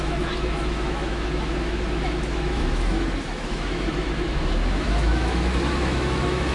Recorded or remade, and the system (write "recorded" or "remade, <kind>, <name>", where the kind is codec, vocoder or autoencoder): remade, autoencoder, DAC-VAE